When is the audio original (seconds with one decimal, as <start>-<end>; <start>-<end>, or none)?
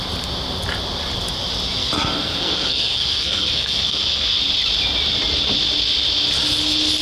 0.0-1.8; 4.4-7.0